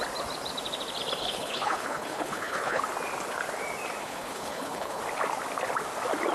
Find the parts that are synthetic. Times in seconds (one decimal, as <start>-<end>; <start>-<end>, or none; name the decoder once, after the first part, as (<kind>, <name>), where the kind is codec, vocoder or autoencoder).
1.2-2.8 (codec, HILCodec); 4.0-5.0

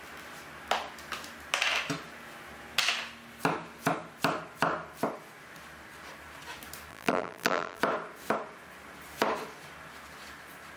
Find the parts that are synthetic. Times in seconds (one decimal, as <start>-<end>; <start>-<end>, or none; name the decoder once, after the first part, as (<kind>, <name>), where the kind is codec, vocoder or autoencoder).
6.9-7.8 (vocoder, BigVGAN v2)